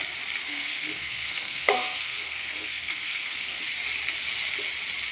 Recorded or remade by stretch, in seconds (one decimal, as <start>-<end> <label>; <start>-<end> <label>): 0.0-0.5 recorded; 0.5-3.6 remade; 3.6-5.1 recorded